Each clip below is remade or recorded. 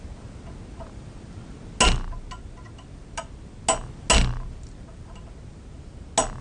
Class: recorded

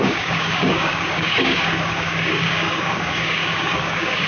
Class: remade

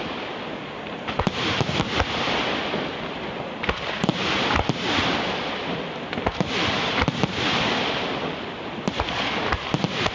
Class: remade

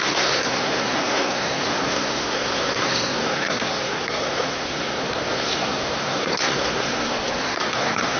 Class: remade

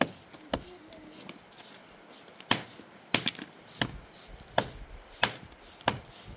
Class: recorded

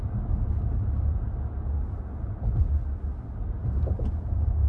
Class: recorded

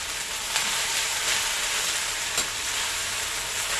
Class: recorded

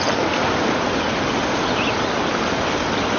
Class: recorded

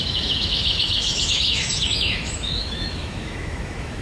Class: remade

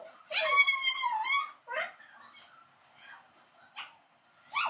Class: remade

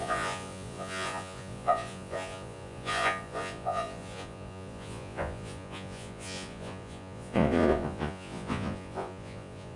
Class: remade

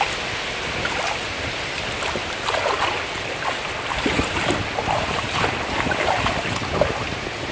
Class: recorded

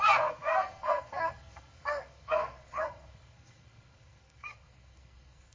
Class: remade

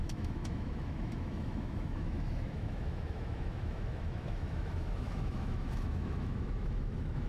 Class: remade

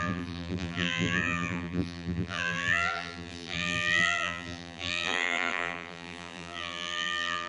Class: remade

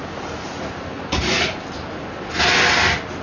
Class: recorded